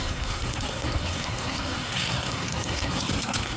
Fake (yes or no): yes